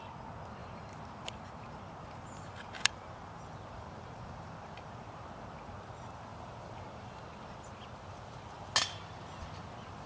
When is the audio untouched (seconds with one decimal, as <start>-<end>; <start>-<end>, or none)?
0.0-0.6; 5.3-6.3; 7.2-10.1